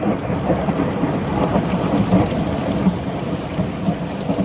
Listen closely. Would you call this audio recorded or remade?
recorded